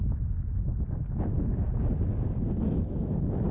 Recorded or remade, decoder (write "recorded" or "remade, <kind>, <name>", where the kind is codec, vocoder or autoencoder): recorded